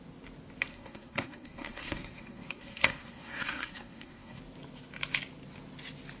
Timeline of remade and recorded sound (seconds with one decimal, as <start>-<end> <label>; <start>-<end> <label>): 0.0-0.7 recorded; 0.7-4.4 remade; 4.4-6.2 recorded